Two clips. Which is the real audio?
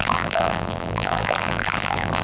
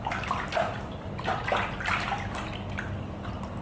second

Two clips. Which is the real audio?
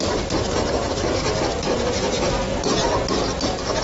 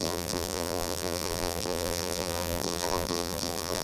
first